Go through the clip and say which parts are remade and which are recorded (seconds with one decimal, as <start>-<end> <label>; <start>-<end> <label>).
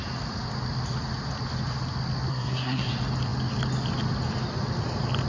0.0-2.3 recorded; 2.3-2.9 remade; 2.9-5.3 recorded